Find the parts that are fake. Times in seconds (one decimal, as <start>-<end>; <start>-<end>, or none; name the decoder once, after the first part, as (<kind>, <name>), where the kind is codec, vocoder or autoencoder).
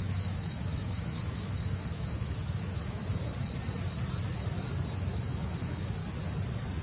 0.0-3.0 (autoencoder, DAC-VAE); 5.2-6.0